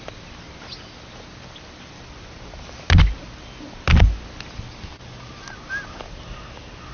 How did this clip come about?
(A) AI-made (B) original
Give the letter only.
B